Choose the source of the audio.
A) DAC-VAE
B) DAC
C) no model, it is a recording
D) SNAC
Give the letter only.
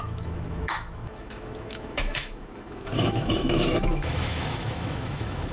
A